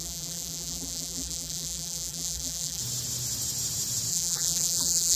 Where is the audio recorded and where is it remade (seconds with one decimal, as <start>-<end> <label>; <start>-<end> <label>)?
0.0-2.8 remade; 2.8-4.1 recorded; 4.1-5.2 remade

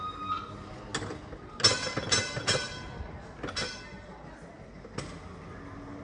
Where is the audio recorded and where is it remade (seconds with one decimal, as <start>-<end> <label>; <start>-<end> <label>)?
0.0-6.0 recorded

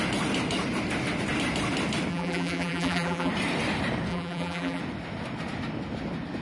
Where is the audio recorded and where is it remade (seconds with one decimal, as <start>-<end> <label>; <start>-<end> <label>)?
0.0-2.1 recorded; 2.1-3.3 remade; 3.3-4.1 recorded; 4.1-4.8 remade; 4.8-6.4 recorded

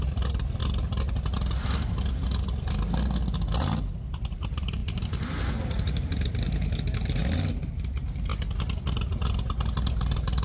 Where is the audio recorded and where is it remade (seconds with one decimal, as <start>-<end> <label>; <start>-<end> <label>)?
0.0-0.6 remade; 0.6-4.3 recorded; 4.3-7.2 remade; 7.2-7.9 recorded; 7.9-8.3 remade; 8.3-9.9 recorded; 9.9-10.4 remade

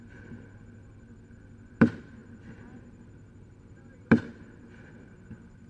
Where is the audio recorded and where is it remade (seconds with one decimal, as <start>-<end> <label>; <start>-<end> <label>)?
0.0-5.7 remade